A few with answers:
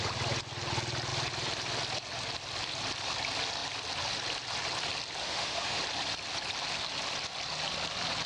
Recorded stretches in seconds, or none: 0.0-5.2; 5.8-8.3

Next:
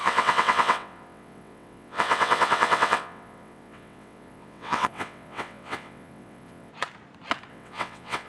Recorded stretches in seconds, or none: 6.7-7.5

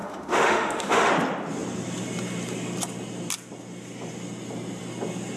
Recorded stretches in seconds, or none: 1.1-5.4

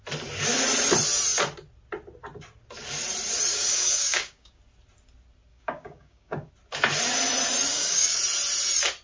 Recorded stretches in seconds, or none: 0.0-3.5; 4.6-5.5; 6.5-7.7; 8.2-9.0

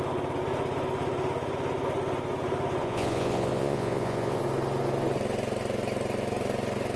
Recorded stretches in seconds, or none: 0.0-2.8; 4.4-7.0

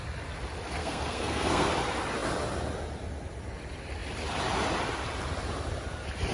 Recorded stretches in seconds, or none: 0.0-0.8; 1.7-6.3

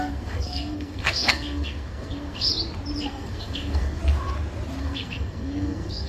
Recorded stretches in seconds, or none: 2.5-3.0; 4.0-4.8

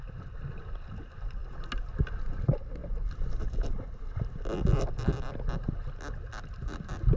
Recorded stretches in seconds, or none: 0.0-7.2